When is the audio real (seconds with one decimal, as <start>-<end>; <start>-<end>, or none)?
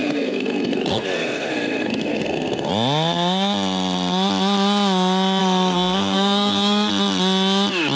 2.7-5.4; 6.9-8.0